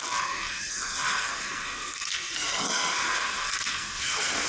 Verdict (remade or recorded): remade